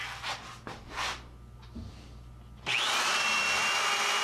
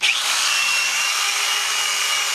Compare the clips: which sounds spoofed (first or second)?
second